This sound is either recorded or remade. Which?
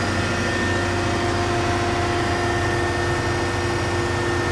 recorded